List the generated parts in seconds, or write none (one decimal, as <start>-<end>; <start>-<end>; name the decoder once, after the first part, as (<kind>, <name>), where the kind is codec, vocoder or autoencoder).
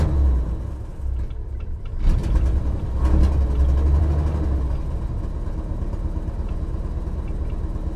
none